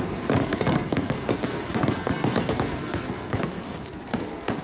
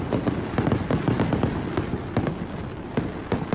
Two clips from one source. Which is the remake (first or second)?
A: first